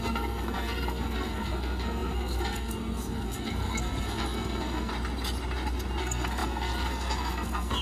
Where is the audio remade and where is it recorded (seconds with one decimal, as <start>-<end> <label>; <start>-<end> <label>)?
0.0-4.9 remade; 4.9-6.0 recorded; 6.0-7.8 remade